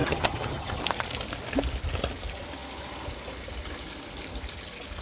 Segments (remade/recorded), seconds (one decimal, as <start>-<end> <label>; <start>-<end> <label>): 0.0-0.8 remade; 0.8-5.0 recorded